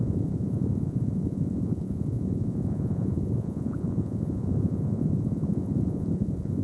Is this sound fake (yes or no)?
yes